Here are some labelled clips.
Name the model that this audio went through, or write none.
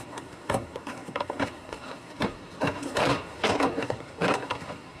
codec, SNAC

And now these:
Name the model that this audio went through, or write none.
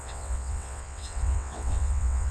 vocoder, WaveNeXt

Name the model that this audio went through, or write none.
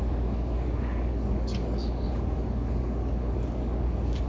codec, DAC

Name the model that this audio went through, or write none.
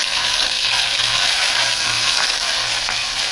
codec, SNAC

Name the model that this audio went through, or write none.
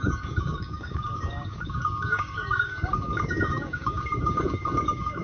codec, DAC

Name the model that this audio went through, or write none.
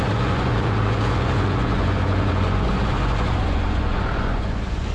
vocoder, Vocos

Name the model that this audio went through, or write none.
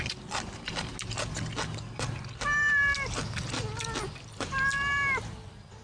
none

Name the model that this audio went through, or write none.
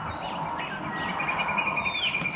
none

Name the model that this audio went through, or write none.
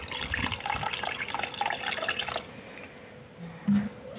none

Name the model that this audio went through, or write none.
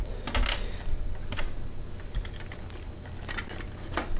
none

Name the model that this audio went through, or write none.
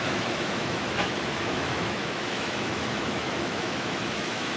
autoencoder, DAC-VAE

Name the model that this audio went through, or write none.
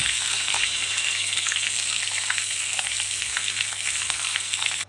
codec, SNAC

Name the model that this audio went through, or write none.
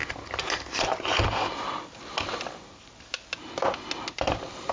none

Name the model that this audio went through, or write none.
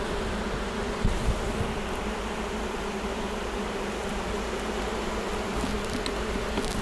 none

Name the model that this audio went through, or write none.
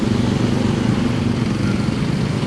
none